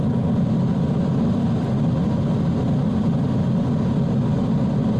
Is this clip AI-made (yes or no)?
no